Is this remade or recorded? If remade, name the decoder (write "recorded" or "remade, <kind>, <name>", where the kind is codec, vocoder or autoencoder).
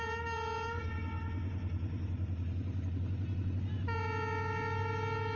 recorded